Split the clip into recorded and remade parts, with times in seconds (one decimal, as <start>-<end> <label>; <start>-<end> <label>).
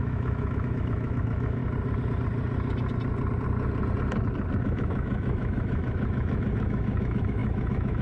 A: 0.0-1.6 remade; 1.6-4.6 recorded; 4.6-8.0 remade